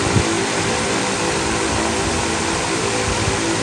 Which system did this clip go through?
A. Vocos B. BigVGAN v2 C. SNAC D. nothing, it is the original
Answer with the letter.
D